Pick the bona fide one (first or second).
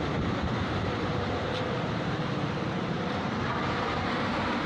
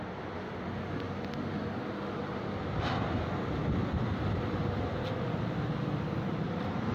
second